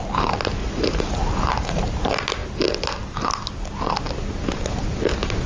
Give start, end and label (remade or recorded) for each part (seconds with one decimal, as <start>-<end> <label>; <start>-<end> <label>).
0.0-0.6 recorded; 0.6-1.2 remade; 1.2-5.5 recorded